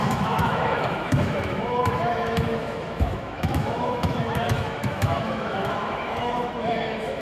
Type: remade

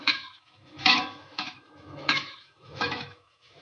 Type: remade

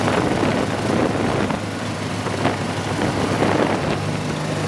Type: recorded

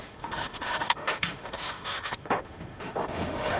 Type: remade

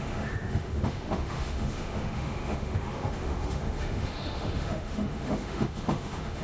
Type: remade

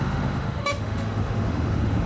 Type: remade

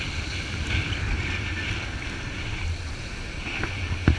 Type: recorded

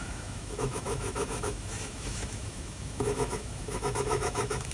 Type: remade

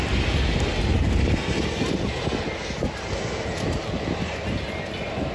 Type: recorded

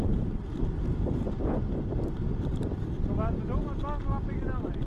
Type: recorded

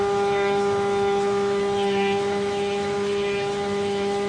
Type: remade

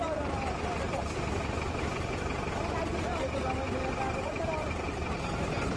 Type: recorded